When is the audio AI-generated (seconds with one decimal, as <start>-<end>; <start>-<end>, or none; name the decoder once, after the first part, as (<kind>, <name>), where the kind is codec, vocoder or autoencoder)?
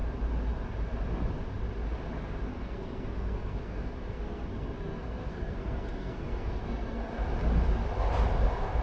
2.5-7.1 (codec, SNAC)